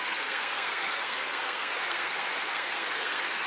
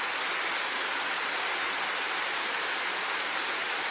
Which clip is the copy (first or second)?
first